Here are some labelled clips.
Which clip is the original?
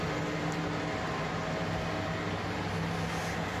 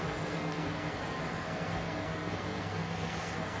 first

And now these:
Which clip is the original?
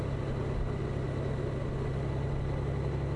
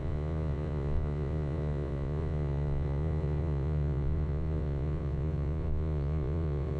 first